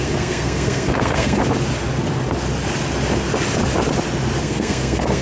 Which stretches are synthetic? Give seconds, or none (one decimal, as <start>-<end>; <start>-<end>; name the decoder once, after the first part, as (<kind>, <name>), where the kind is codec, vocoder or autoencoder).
0.0-1.4 (codec, SNAC); 4.4-5.2